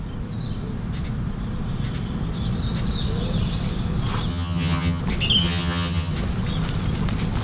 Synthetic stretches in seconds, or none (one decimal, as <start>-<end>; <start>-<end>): 4.3-5.0; 5.4-6.1